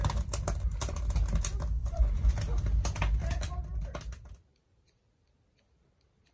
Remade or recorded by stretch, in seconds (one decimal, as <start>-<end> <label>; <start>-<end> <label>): 0.0-1.8 recorded; 1.8-2.3 remade; 2.3-6.3 recorded